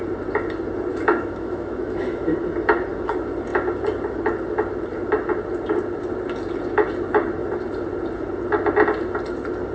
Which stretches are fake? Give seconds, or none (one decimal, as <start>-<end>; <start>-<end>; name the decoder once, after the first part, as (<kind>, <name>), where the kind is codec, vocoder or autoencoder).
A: 0.9-2.4 (autoencoder, DAC-VAE)